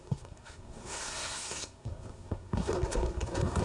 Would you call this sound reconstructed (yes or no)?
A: yes